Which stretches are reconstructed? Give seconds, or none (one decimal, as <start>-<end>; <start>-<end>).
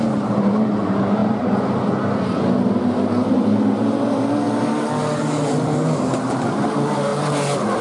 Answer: none